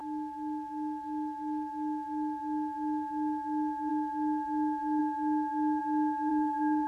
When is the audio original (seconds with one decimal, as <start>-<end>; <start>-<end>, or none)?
0.0-6.3